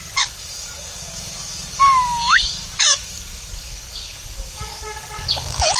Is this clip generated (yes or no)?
yes